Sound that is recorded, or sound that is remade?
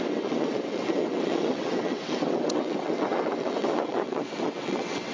remade